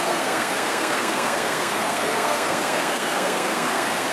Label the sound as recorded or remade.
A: remade